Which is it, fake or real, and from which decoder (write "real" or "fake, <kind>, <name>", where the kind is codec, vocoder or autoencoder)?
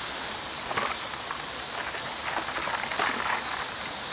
real